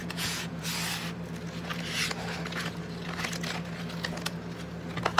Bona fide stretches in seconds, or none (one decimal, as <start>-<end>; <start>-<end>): 0.6-5.2